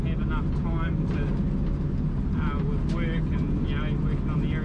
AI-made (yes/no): no